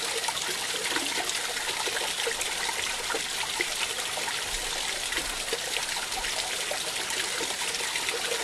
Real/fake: real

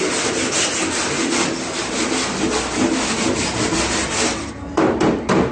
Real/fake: real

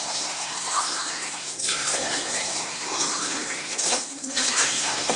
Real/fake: fake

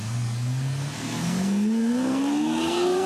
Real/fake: fake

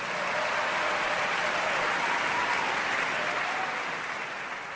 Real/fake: real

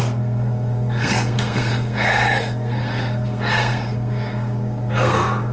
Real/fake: fake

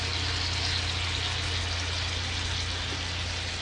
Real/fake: real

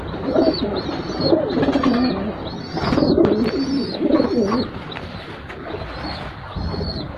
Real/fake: real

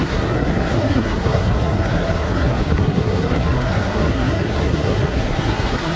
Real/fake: fake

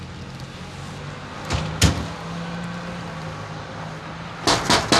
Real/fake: real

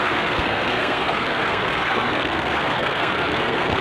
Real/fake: fake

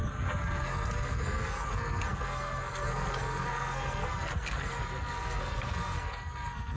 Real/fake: fake